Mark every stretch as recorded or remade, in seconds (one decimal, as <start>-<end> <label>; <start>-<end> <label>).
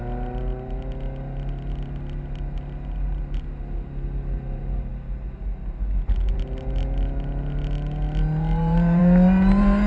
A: 0.0-9.9 recorded